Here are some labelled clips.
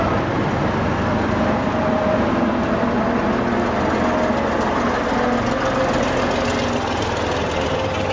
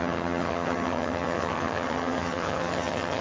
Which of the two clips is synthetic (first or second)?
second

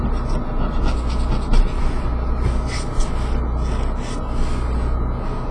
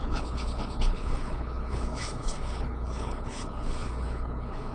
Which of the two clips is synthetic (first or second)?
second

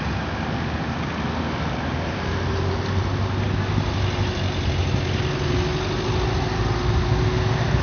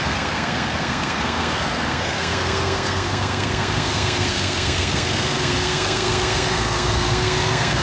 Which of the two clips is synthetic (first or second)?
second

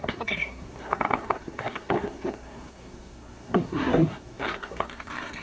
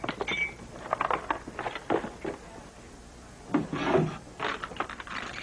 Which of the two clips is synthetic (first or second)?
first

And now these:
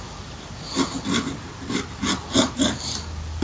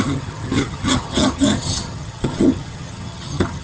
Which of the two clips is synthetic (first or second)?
second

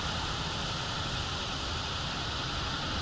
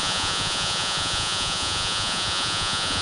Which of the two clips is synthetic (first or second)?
second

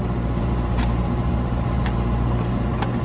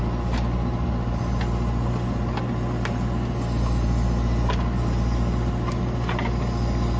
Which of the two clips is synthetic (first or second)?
first